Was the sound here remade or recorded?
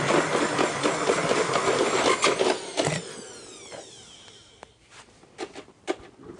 recorded